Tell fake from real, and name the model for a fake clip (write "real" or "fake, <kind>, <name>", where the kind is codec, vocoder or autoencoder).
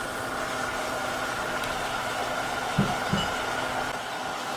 real